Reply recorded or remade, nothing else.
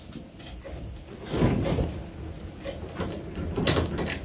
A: recorded